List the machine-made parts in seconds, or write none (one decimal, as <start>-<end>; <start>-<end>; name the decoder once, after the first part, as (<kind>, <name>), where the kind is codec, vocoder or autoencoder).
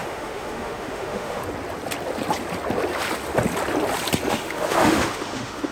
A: 0.0-1.4 (autoencoder, DAC-VAE); 4.3-5.7